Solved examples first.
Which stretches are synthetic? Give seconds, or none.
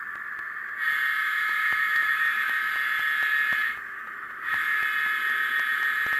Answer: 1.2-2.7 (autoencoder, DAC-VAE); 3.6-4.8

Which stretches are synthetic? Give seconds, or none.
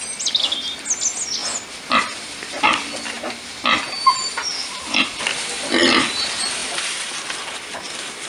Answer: none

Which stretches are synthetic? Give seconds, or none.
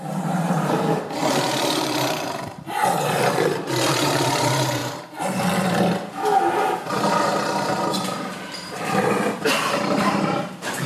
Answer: 0.0-4.8 (vocoder, BigVGAN v2); 9.5-10.9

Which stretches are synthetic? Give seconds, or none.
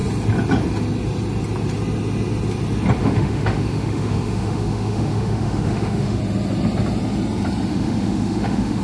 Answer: 3.0-6.2 (autoencoder, DAC-VAE); 7.7-8.8